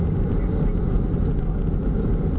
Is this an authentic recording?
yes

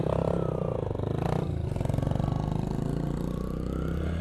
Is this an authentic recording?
yes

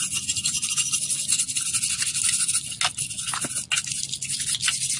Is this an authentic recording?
yes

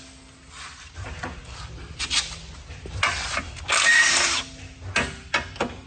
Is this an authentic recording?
yes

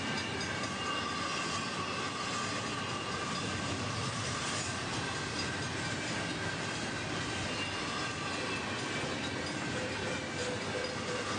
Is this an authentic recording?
yes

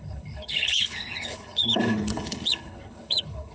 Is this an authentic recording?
no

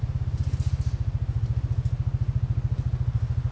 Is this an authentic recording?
yes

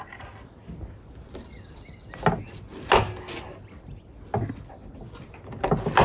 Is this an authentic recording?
yes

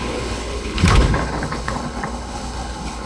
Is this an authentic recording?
no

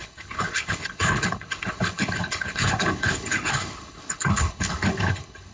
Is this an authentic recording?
no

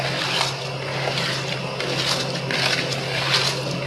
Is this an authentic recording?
yes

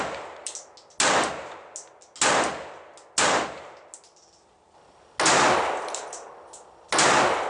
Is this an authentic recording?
yes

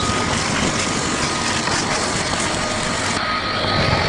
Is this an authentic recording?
yes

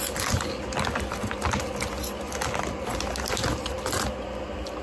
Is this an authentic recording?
yes